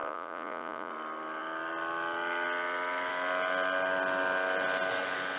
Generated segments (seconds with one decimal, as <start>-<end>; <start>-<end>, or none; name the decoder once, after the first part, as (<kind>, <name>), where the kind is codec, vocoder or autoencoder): 0.0-0.9 (vocoder, Vocos)